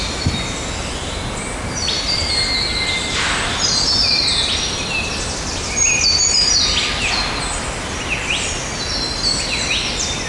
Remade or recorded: recorded